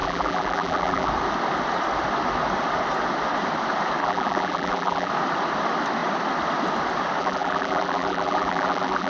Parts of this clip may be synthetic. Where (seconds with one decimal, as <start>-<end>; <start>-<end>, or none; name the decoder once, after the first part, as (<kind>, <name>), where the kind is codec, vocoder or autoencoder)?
0.0-1.1 (vocoder, BigVGAN v2); 4.0-5.1; 7.2-9.1